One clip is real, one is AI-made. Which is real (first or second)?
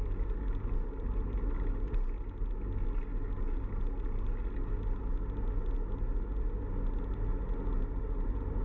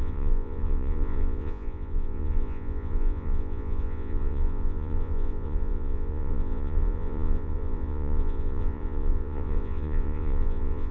first